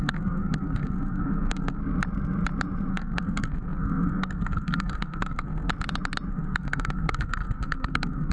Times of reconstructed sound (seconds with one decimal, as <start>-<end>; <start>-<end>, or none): 0.0-1.8; 2.9-5.7; 6.3-8.3